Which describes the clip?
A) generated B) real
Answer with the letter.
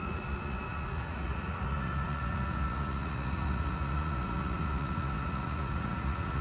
A